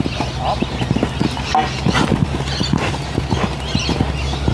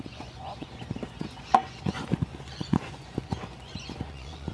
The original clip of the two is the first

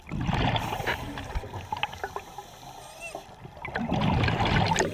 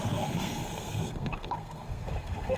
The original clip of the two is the first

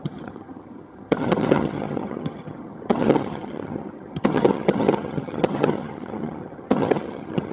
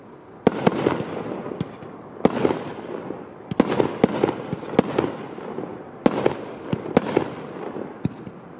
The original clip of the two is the second